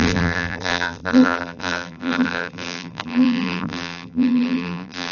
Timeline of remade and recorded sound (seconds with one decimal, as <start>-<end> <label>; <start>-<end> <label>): 0.0-5.1 remade